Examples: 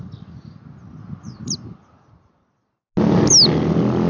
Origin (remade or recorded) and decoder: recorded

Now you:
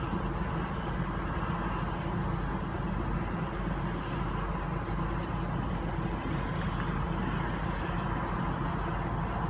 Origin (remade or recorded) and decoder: recorded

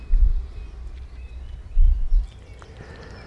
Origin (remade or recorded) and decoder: recorded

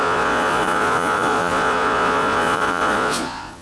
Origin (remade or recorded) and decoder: remade, vocoder, Vocos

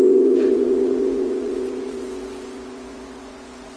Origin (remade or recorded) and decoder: remade, vocoder, Vocos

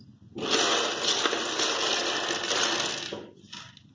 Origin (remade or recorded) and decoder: recorded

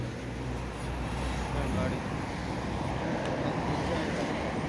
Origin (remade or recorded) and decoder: recorded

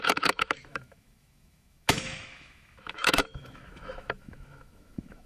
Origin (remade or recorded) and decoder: remade, autoencoder, DAC-VAE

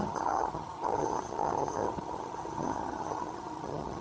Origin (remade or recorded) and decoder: remade, vocoder, HiFi-GAN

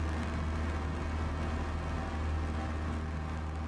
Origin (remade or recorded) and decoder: recorded